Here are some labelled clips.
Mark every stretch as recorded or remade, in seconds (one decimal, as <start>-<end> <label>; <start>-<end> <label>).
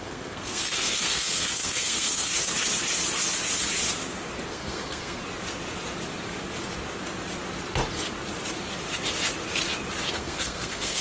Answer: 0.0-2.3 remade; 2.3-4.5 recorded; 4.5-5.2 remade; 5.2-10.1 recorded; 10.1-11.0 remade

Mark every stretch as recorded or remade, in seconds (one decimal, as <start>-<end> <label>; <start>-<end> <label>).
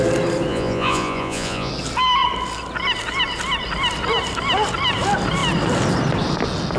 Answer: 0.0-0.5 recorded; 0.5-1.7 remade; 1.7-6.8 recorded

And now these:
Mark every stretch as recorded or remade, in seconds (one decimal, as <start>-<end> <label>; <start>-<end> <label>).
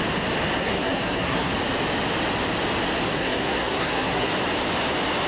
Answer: 0.0-0.6 recorded; 0.6-1.5 remade; 1.5-3.1 recorded; 3.1-4.3 remade; 4.3-5.3 recorded